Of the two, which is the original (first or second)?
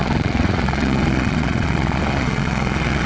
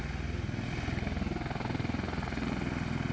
second